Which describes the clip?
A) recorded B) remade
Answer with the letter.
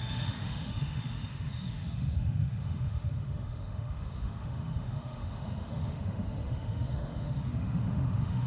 B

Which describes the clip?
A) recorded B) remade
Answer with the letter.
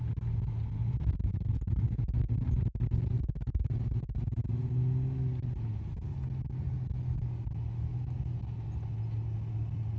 A